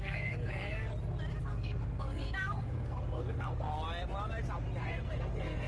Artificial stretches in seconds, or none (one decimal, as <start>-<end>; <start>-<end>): 0.0-0.9; 1.4-3.7; 4.8-5.7